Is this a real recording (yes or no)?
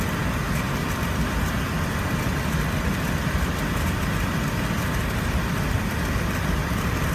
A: yes